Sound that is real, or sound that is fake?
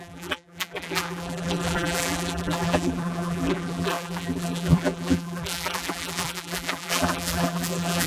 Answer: fake